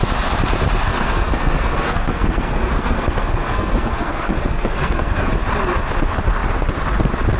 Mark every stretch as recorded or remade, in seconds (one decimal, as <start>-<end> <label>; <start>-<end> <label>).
0.0-0.9 recorded; 0.9-5.3 remade; 5.3-7.4 recorded